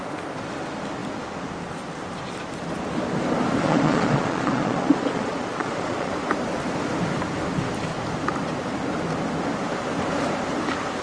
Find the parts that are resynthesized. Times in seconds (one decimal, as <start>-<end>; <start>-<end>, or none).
3.6-6.1